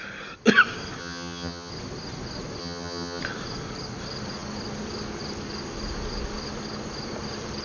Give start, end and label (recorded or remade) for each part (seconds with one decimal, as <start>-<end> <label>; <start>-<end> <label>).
0.0-1.0 recorded; 1.0-1.7 remade; 1.7-2.6 recorded; 2.6-3.2 remade; 3.2-7.6 recorded